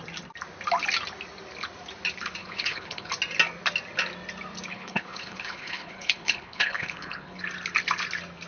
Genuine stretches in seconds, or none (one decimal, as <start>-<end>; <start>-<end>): 0.0-2.4; 3.1-4.7; 7.4-8.5